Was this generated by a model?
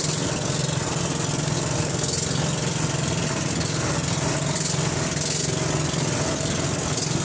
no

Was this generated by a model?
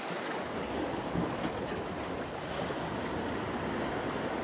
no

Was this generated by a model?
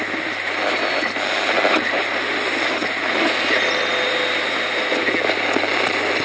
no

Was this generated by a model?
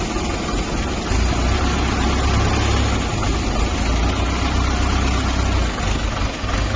no